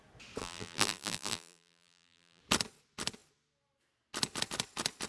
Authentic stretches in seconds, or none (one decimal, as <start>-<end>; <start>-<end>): 0.0-0.4; 2.4-5.1